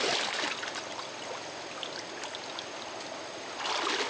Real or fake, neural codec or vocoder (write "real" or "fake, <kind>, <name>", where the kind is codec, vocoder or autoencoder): real